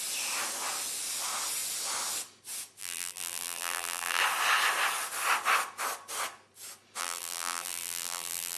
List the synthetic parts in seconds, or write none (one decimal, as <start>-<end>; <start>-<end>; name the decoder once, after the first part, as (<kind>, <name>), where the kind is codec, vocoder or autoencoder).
2.8-4.2 (vocoder, BigVGAN v2); 7.0-8.6

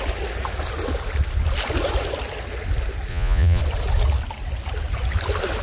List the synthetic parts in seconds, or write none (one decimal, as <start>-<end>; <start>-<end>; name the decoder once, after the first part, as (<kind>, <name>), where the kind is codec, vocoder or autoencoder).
3.1-3.6 (vocoder, Vocos)

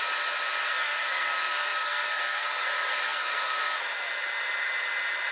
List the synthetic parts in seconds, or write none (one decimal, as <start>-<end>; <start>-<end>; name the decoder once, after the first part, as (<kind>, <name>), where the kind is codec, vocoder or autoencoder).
0.6-3.8 (codec, SNAC)

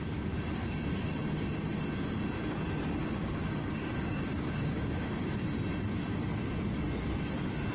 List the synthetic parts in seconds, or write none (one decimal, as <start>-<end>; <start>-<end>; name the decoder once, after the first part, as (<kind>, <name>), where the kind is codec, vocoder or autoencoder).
3.0-5.4 (codec, DAC)

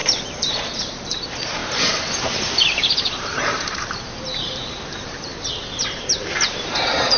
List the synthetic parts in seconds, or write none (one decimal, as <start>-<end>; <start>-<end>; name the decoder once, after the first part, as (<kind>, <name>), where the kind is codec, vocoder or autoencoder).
0.0-5.3 (vocoder, BigVGAN v2); 6.0-7.2